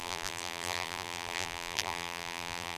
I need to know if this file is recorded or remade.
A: remade